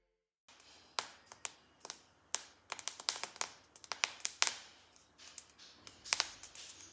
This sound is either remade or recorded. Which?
recorded